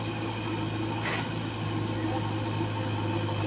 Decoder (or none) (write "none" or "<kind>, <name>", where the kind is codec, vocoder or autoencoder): none